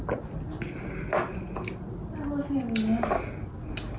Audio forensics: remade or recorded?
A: recorded